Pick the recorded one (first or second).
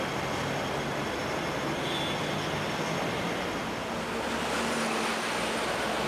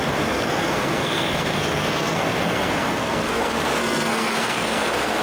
first